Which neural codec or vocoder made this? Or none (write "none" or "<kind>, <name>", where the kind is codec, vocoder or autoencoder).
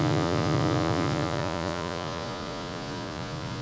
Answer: vocoder, Vocos